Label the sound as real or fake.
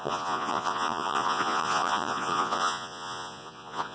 fake